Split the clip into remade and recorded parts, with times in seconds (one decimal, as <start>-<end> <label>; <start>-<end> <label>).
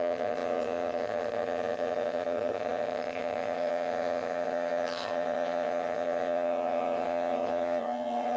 0.0-8.4 remade